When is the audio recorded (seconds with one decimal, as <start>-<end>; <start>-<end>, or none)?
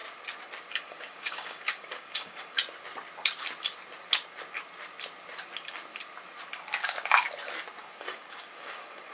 0.0-0.7; 2.6-7.8